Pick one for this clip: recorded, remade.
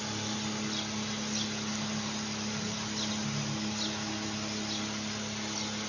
recorded